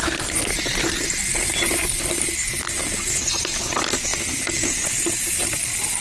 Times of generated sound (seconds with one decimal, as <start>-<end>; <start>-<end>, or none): none